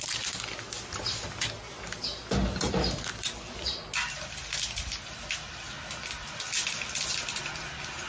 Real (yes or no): yes